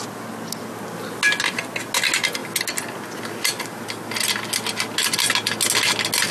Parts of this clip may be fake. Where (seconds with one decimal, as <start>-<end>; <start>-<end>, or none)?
none